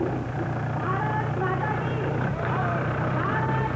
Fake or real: fake